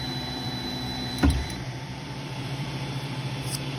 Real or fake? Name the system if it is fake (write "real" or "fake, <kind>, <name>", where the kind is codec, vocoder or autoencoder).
fake, vocoder, BigVGAN v2